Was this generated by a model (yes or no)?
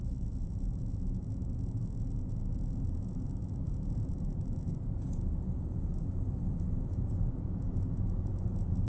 yes